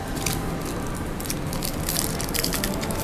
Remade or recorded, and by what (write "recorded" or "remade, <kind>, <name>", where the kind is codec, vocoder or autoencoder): recorded